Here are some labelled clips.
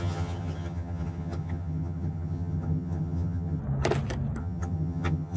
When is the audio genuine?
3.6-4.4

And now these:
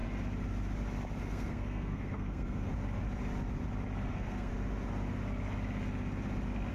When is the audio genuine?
0.0-1.2; 2.7-4.1; 4.5-6.7

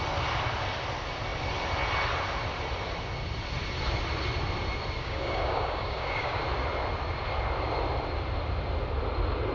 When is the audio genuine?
0.0-5.0; 6.4-9.5

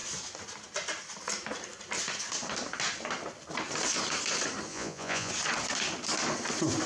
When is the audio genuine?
0.0-4.7; 5.3-6.9

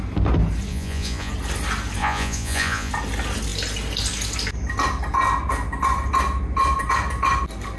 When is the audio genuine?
0.0-0.7; 1.3-2.0; 2.9-7.8

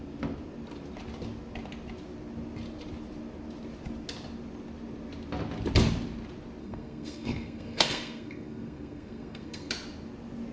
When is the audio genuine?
0.0-6.6; 9.7-10.5

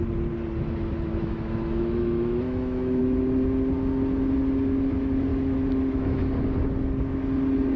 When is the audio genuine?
0.0-1.1; 3.0-5.3; 6.2-7.8

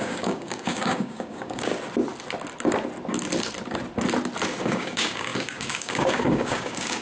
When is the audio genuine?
1.7-4.6